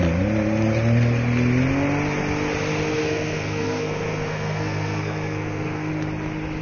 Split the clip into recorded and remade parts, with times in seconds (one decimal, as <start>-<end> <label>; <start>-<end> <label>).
0.0-3.0 recorded; 3.0-5.9 remade; 5.9-6.6 recorded